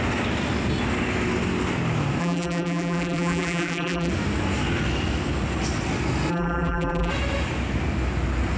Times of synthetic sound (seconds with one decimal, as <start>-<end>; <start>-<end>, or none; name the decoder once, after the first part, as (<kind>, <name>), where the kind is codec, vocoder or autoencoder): 2.2-4.1 (vocoder, BigVGAN v2); 6.3-7.1